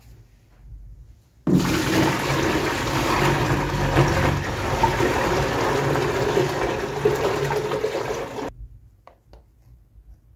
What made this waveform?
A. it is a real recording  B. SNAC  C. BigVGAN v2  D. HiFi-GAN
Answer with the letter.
A